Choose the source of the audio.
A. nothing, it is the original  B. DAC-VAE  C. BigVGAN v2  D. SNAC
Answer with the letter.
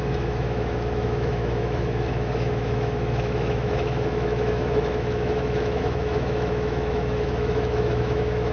B